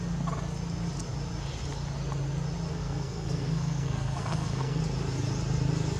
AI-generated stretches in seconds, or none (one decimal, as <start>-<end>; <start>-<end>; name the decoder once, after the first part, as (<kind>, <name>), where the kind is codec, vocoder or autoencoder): 2.7-4.8 (codec, SNAC)